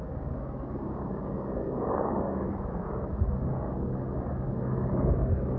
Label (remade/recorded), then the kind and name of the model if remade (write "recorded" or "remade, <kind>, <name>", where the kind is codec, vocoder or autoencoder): remade, codec, DAC